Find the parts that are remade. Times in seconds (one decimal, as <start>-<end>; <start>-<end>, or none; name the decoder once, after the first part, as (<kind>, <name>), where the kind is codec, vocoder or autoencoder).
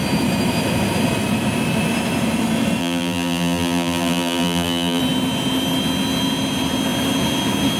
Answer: 2.8-5.0 (vocoder, BigVGAN v2)